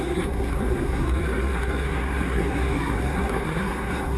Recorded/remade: remade